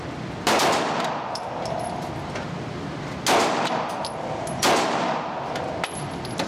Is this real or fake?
real